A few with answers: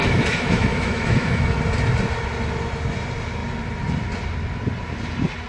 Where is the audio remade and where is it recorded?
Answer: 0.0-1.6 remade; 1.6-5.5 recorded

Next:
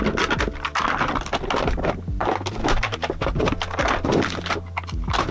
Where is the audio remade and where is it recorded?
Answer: 0.0-5.3 recorded

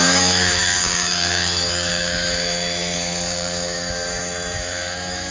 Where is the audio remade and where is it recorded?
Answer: 0.0-5.3 remade

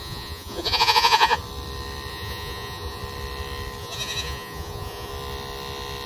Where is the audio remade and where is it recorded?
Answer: 0.0-1.4 remade; 1.4-2.1 recorded; 2.1-3.0 remade; 3.0-3.8 recorded; 3.8-5.1 remade; 5.1-6.1 recorded

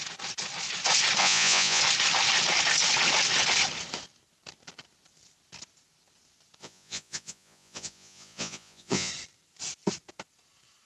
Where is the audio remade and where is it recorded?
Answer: 0.0-1.2 recorded; 1.2-1.8 remade; 1.8-6.6 recorded; 6.6-9.1 remade; 9.1-10.9 recorded

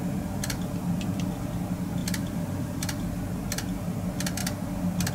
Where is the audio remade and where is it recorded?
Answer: 0.0-2.0 recorded; 2.0-3.1 remade; 3.1-5.1 recorded

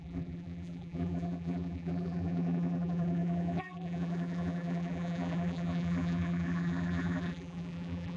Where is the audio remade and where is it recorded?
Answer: 0.0-8.2 remade